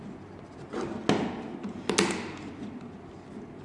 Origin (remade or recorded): recorded